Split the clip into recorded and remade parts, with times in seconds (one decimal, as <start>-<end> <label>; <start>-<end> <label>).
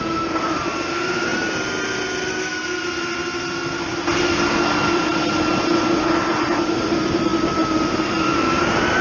0.0-3.9 recorded; 3.9-5.4 remade; 5.4-7.3 recorded; 7.3-9.0 remade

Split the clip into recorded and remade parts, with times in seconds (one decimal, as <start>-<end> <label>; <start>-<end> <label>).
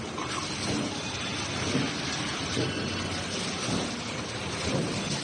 0.0-5.2 recorded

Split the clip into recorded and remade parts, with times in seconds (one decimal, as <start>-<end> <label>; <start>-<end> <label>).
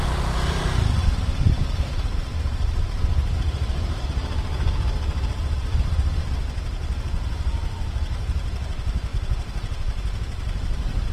0.0-11.1 remade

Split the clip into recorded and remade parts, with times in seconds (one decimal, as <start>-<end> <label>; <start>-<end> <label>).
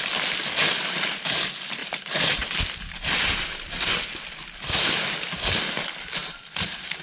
0.0-6.2 recorded; 6.2-7.0 remade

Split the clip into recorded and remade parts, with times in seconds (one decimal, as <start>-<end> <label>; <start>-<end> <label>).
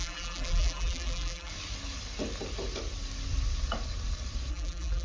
0.0-1.5 remade; 1.5-4.5 recorded; 4.5-5.0 remade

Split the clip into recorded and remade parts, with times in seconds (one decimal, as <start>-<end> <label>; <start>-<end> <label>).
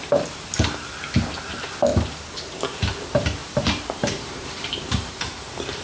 0.0-1.9 recorded; 1.9-2.6 remade; 2.6-3.4 recorded; 3.4-5.2 remade; 5.2-5.8 recorded